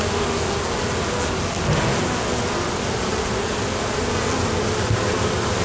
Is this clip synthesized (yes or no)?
no